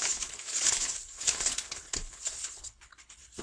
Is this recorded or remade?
remade